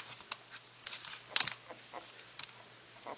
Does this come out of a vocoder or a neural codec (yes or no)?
no